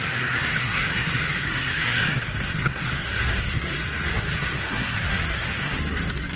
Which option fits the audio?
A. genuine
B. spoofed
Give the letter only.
B